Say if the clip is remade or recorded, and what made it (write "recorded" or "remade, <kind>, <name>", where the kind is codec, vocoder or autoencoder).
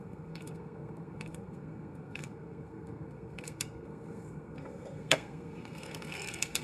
remade, codec, SNAC